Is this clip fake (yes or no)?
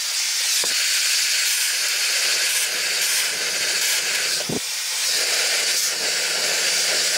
no